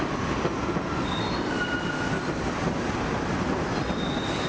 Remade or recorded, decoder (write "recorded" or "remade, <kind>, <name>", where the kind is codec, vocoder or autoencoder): recorded